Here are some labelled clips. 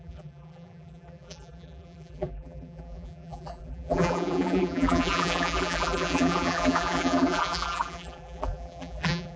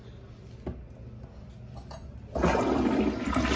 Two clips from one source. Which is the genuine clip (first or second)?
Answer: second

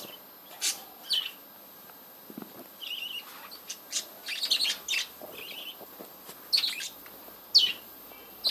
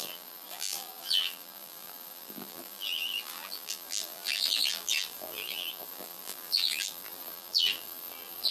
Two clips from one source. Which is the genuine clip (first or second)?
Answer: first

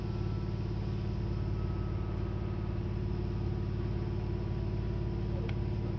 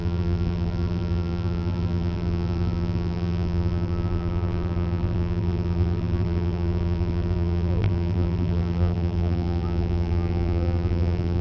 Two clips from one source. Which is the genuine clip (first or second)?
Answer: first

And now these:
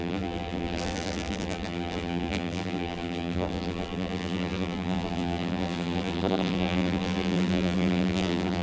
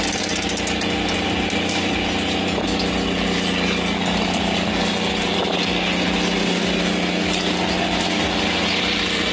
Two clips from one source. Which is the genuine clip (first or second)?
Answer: second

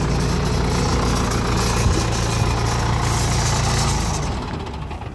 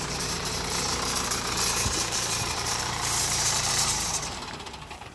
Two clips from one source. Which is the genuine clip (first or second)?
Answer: first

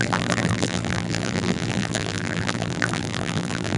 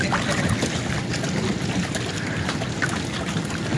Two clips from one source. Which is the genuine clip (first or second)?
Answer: second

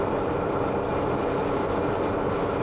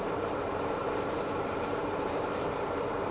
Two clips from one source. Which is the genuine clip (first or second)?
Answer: first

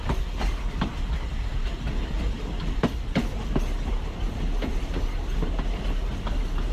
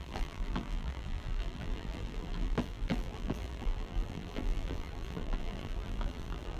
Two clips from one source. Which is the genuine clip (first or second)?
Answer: first